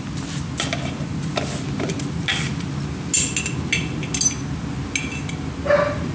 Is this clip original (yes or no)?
yes